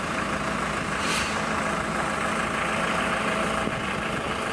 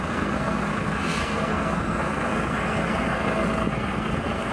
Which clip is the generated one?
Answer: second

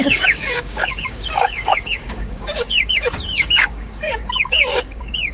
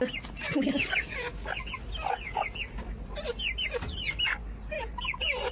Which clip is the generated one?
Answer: first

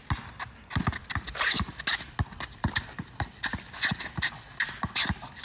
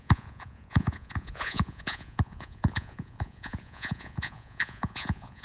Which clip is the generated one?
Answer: second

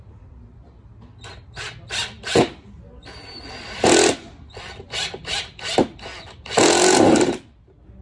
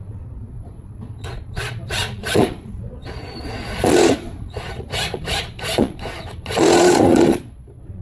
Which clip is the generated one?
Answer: second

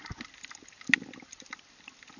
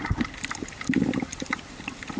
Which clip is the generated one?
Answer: second